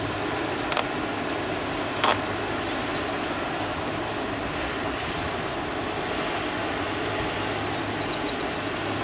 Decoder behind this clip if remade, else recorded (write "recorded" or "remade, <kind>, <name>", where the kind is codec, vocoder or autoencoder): recorded